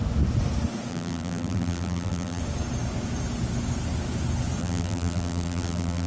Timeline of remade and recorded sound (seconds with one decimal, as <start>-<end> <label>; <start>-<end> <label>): 0.0-0.9 recorded; 0.9-2.4 remade; 2.4-4.6 recorded; 4.6-6.1 remade